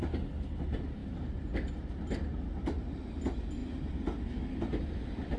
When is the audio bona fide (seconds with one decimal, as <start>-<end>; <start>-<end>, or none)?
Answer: 0.0-5.4